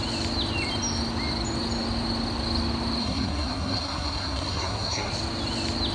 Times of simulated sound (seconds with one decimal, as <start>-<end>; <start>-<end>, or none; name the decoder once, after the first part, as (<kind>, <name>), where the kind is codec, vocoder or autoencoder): 3.0-5.1 (codec, SNAC)